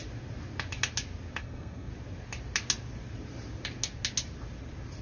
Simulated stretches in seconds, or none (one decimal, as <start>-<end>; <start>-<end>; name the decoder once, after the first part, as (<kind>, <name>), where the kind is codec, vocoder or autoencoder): 1.4-1.9 (codec, SNAC)